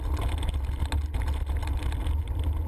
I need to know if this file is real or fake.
real